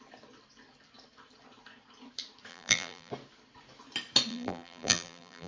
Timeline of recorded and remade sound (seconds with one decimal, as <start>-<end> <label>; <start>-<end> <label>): 0.0-2.5 recorded; 2.5-3.1 remade; 3.1-4.3 recorded; 4.3-5.5 remade

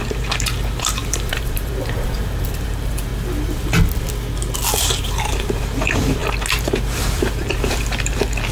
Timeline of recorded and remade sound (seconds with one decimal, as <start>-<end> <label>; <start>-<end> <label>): 0.0-3.1 remade; 3.1-4.8 recorded; 4.8-8.5 remade

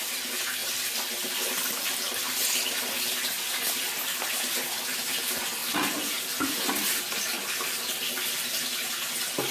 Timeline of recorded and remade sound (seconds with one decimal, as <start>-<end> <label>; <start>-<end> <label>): 0.0-0.6 recorded; 0.6-2.4 remade; 2.4-9.5 recorded

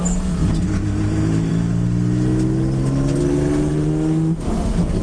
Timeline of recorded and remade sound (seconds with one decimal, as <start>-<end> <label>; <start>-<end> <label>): 0.0-5.0 recorded

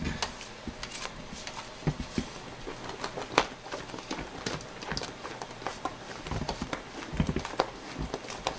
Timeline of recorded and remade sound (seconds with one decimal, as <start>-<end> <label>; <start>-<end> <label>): 0.0-5.7 recorded; 5.7-6.4 remade; 6.4-8.6 recorded

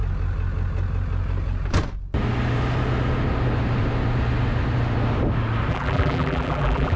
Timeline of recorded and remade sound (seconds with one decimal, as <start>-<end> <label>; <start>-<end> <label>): 0.0-5.7 recorded; 5.7-7.0 remade

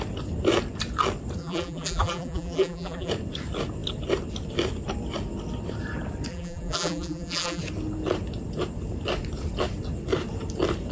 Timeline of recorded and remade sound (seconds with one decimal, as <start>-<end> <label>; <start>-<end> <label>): 0.0-1.4 recorded; 1.4-3.1 remade; 3.1-6.3 recorded; 6.3-7.6 remade; 7.6-10.9 recorded